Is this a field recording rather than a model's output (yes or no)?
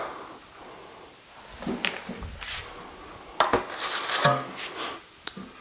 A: yes